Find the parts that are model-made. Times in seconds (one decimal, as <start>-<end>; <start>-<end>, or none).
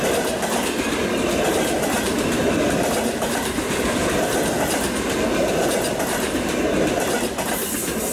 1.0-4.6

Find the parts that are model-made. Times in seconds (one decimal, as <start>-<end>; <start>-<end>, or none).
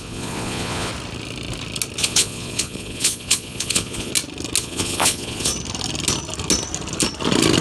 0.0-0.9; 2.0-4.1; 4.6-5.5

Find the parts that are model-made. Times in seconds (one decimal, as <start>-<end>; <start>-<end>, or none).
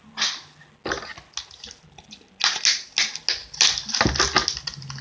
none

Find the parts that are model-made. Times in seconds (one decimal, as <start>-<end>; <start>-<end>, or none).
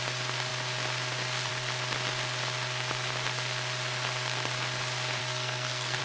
5.2-6.0